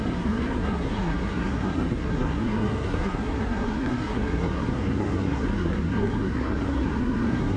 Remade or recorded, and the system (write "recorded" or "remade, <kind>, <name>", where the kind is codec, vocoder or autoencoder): remade, codec, SNAC